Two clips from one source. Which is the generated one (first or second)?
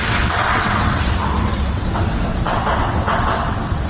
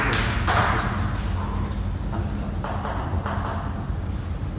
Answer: first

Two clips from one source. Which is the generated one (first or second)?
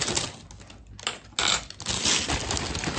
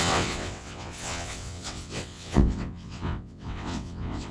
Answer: second